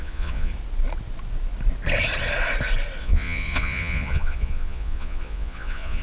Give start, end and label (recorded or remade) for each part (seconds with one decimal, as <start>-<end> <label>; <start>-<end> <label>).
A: 0.0-0.5 remade; 0.5-3.0 recorded; 3.0-6.0 remade